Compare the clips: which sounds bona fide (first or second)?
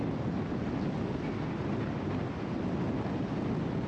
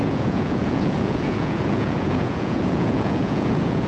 first